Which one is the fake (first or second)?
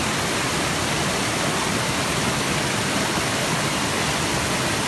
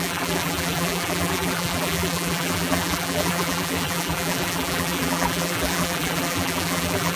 second